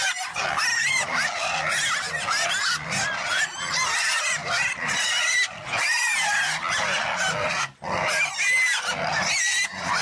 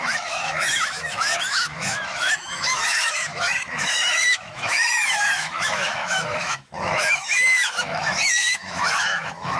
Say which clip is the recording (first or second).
first